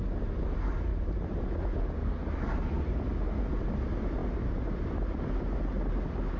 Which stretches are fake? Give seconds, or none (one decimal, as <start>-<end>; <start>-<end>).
0.9-1.4; 2.0-2.9